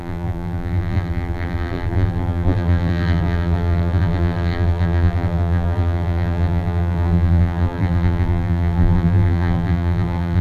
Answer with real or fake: fake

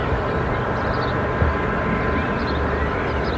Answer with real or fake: real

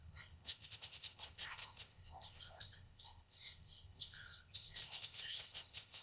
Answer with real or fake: fake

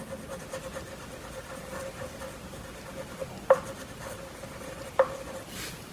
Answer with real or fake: real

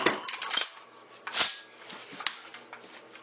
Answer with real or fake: real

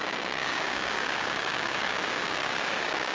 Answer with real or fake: fake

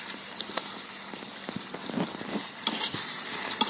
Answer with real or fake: real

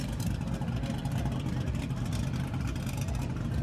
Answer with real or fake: real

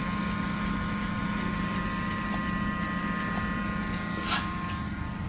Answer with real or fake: real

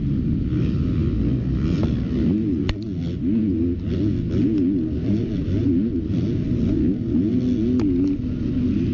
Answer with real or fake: real